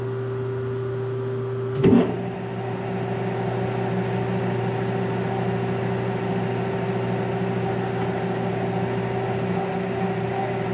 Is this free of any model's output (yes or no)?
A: yes